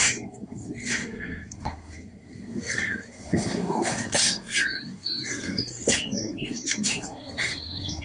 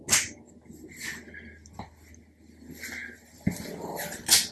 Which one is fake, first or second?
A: first